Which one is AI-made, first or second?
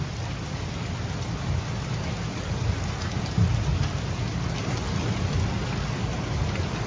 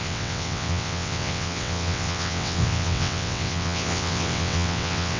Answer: second